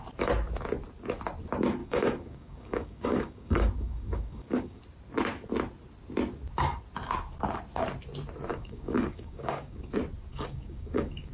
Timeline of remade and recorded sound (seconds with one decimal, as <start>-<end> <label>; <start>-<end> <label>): 0.0-1.8 recorded; 1.8-4.8 remade; 4.8-8.5 recorded; 8.5-9.9 remade; 9.9-10.3 recorded; 10.3-11.3 remade